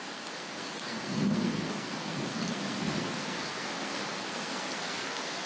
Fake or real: fake